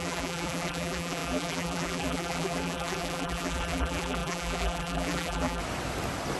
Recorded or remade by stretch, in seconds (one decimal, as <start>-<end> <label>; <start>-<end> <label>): 0.0-5.6 remade; 5.6-6.4 recorded

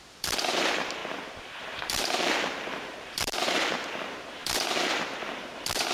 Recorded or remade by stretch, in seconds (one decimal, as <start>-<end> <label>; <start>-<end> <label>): 0.0-1.0 remade; 1.0-1.6 recorded; 1.6-5.9 remade

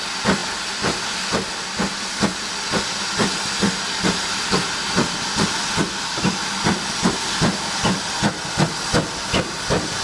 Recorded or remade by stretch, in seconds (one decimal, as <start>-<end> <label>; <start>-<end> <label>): 0.0-4.6 recorded; 4.6-8.3 remade; 8.3-10.0 recorded

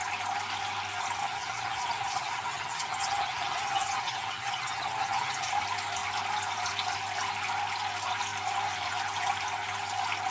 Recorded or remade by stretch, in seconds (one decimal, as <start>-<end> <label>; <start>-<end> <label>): 0.0-1.2 recorded; 1.2-5.5 remade; 5.5-10.3 recorded

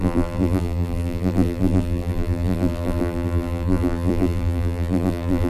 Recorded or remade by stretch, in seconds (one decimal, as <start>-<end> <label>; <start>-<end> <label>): 0.0-5.5 remade